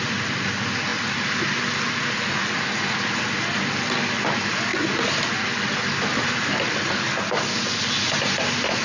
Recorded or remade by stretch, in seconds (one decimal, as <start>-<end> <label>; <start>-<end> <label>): 0.0-8.8 recorded